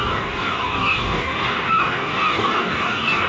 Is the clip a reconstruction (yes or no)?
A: yes